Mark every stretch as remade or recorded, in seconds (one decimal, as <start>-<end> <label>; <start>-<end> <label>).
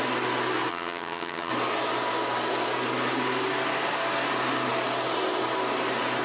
0.0-0.7 recorded; 0.7-1.5 remade; 1.5-6.2 recorded